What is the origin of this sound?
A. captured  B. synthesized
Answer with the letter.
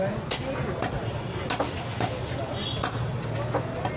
A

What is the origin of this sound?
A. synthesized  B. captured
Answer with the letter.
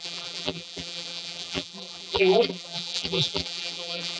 A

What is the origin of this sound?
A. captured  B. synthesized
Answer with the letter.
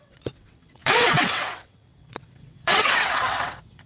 B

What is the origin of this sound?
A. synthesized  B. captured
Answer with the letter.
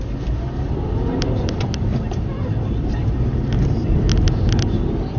B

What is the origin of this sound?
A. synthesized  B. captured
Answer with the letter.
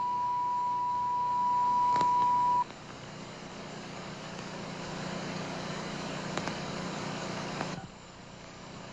A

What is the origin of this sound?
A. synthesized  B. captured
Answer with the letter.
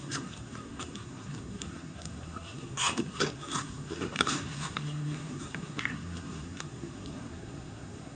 A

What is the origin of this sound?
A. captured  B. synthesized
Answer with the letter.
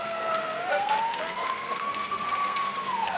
B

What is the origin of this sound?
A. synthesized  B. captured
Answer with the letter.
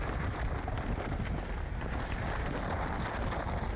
B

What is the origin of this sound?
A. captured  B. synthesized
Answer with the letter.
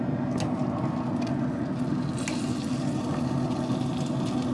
A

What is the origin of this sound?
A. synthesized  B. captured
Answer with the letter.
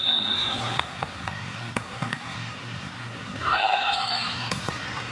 A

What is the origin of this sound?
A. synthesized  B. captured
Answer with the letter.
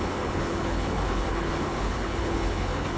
A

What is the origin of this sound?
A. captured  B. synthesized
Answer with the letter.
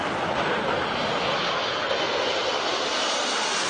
A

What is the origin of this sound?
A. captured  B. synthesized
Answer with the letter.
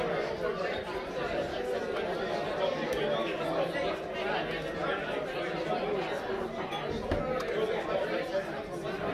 A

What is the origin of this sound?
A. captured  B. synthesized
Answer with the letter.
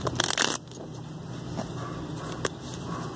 A